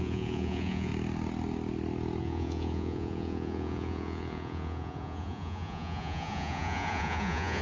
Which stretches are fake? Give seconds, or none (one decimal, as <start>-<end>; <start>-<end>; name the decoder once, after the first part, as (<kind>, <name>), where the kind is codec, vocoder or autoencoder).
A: 0.0-0.9 (vocoder, Vocos); 2.2-7.6